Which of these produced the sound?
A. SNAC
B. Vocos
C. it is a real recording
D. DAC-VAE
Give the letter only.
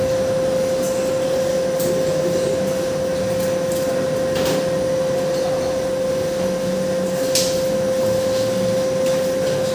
C